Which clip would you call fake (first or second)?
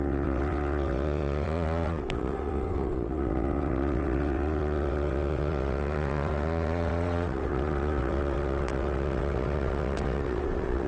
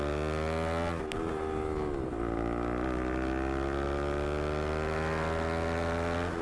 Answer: first